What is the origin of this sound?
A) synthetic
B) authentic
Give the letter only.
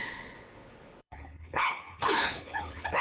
A